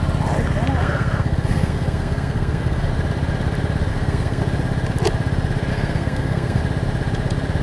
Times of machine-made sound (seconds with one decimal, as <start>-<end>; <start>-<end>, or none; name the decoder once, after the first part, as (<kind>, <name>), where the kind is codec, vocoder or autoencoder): 0.8-2.9 (codec, SNAC); 3.9-4.4; 5.7-6.6